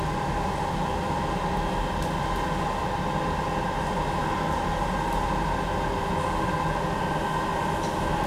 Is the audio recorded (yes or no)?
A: yes